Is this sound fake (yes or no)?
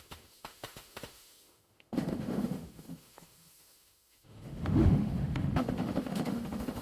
yes